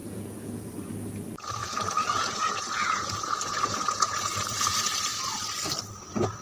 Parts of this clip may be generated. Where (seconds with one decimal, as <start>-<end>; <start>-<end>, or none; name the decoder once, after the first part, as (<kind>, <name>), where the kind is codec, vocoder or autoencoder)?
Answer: 0.0-0.7 (vocoder, Vocos); 1.6-5.0